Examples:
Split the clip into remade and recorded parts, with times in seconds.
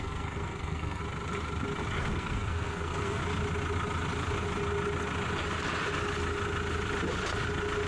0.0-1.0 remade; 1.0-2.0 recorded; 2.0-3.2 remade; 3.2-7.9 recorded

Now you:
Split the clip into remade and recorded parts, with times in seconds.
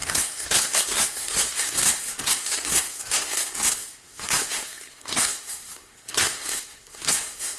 0.0-7.6 remade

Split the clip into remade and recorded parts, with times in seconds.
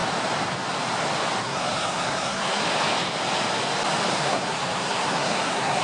0.0-1.4 recorded; 1.4-2.6 remade; 2.6-4.2 recorded; 4.2-5.8 remade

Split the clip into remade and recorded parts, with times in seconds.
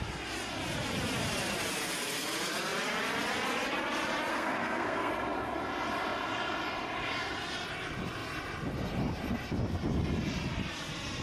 0.0-4.3 recorded; 4.3-5.1 remade; 5.1-11.2 recorded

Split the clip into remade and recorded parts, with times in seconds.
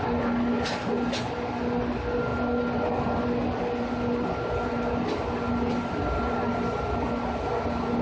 0.0-8.0 recorded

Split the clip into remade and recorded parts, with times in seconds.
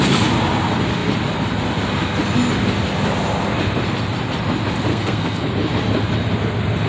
0.0-4.9 recorded; 4.9-5.5 remade; 5.5-6.9 recorded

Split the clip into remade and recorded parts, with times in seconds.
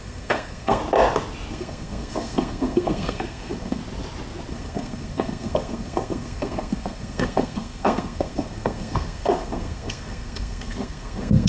0.0-0.8 remade; 0.8-1.5 recorded; 1.5-3.8 remade; 3.8-4.5 recorded; 4.5-11.5 remade